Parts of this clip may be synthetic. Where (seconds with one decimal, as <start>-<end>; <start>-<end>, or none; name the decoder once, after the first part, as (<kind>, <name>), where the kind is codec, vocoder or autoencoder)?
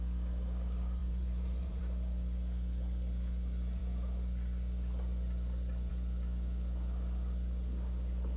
1.0-1.8 (vocoder, BigVGAN v2)